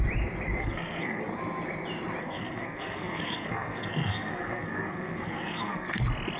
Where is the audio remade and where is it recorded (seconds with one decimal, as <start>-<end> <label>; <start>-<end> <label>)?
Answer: 0.0-0.6 recorded; 0.6-1.2 remade; 1.2-2.2 recorded; 2.2-6.0 remade; 6.0-6.4 recorded